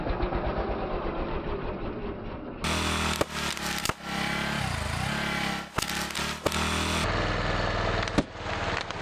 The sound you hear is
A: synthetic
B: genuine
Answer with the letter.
B